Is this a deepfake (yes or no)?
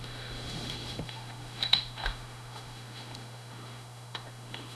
yes